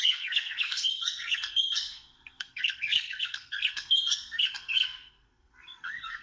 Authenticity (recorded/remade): remade